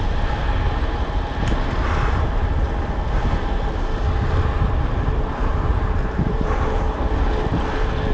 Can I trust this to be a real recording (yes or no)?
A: yes